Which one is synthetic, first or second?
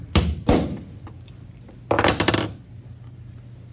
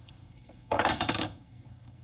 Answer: second